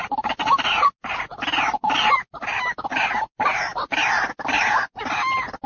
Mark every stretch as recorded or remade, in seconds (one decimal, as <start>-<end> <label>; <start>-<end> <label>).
0.0-5.7 recorded